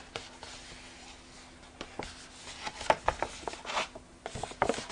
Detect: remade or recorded recorded